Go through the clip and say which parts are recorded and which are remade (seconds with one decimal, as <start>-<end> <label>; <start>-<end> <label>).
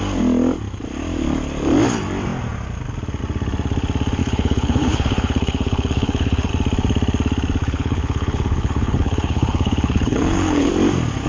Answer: 0.0-4.2 recorded; 4.2-6.5 remade; 6.5-7.6 recorded; 7.6-10.7 remade; 10.7-11.3 recorded